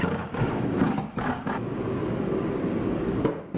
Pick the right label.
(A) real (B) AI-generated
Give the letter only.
B